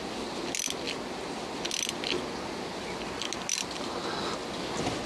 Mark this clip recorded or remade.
recorded